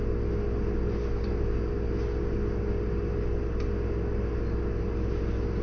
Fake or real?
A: real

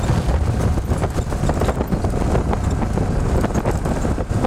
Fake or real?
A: real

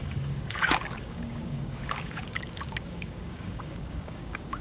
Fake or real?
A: fake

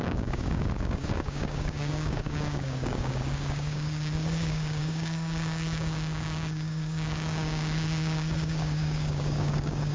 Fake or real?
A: fake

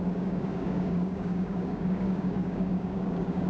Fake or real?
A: fake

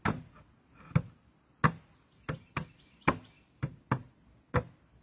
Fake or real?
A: real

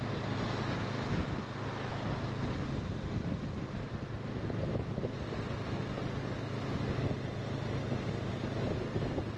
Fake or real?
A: real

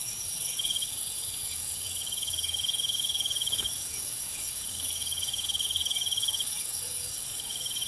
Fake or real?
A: fake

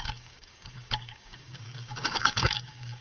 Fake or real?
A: fake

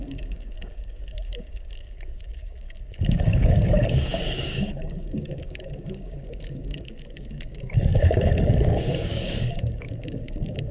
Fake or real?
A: fake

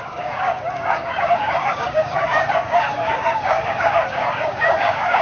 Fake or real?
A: fake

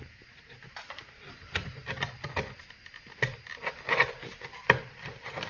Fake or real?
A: real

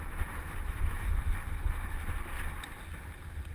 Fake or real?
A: real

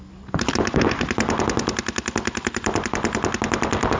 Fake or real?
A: real